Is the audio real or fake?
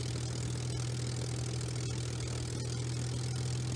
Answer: real